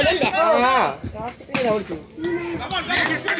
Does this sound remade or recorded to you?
recorded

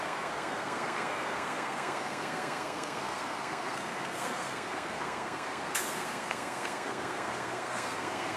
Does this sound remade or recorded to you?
remade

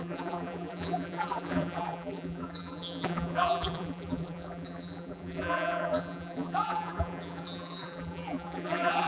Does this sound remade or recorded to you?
remade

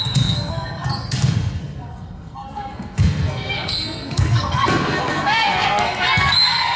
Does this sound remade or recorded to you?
remade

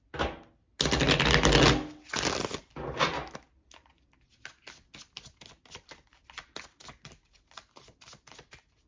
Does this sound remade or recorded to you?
recorded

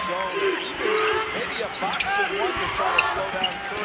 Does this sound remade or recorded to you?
recorded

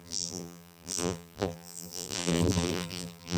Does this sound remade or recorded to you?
remade